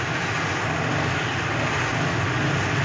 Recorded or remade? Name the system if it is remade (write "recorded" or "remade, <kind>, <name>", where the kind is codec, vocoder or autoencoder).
recorded